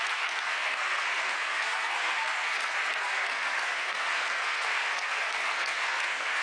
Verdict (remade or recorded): remade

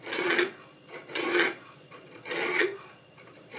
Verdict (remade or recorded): remade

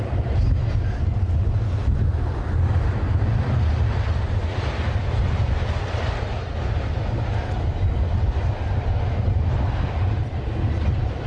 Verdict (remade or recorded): recorded